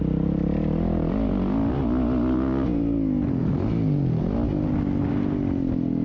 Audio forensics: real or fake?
real